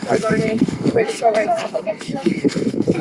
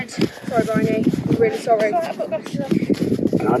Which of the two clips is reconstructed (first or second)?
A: first